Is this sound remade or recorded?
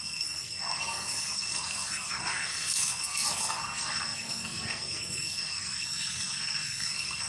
remade